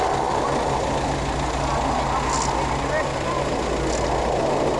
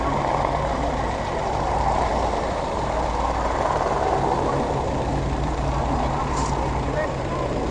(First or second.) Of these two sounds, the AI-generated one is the second